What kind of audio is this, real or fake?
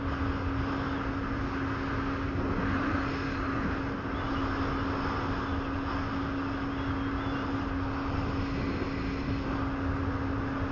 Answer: real